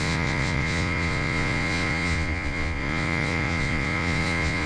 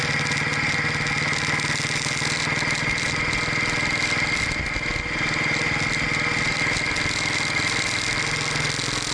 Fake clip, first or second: first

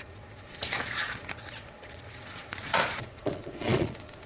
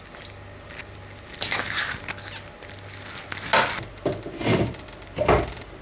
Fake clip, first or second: first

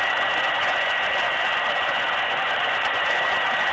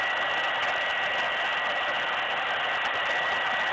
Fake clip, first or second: first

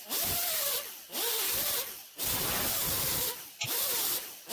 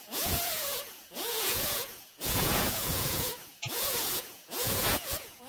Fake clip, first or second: second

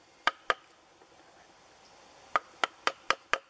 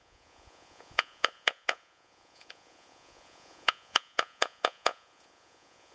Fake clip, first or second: second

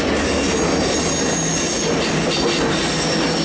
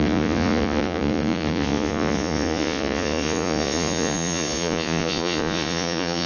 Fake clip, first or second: second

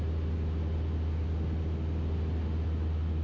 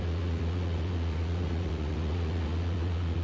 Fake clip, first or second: second